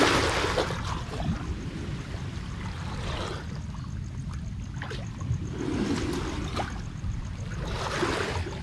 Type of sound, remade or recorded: recorded